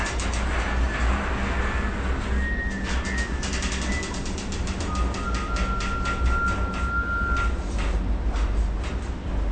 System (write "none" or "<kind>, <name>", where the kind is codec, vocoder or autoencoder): none